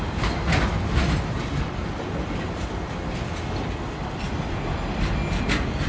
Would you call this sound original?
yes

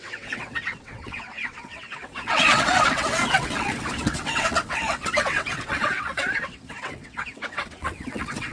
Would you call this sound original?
no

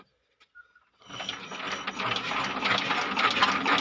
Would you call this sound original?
yes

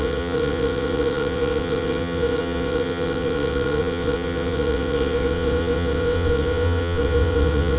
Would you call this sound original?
no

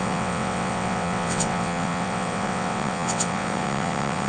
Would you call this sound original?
no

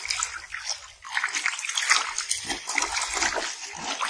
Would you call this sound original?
yes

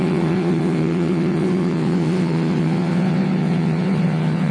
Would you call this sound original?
no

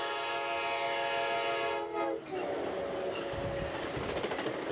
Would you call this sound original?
yes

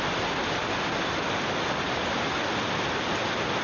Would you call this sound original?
yes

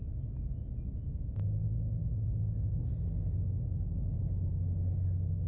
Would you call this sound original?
yes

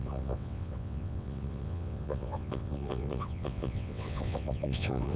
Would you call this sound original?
no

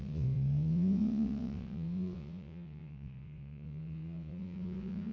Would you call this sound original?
no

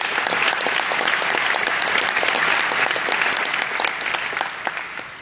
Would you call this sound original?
yes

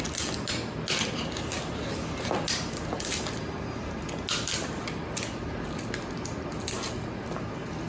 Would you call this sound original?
yes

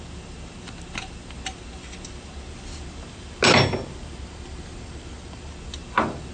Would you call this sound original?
yes